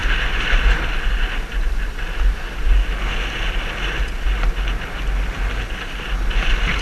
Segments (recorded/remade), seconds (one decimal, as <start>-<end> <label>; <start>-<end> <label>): 0.0-6.8 recorded